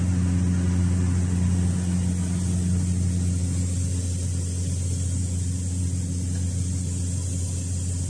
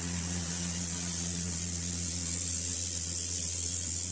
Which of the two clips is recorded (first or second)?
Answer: first